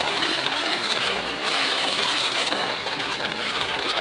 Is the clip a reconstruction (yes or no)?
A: yes